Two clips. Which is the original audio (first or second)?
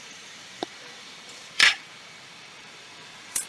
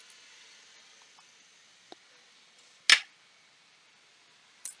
second